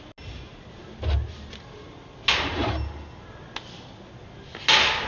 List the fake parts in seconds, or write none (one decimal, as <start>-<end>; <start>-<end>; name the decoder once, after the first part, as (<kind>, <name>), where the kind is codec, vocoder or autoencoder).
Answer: none